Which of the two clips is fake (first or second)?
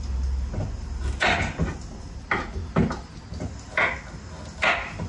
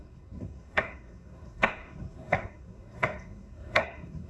second